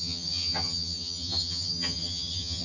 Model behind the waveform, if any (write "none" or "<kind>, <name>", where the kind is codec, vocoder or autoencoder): vocoder, HiFi-GAN